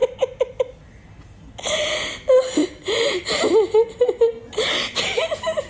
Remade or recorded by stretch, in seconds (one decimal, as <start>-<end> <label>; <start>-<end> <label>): 0.0-5.7 recorded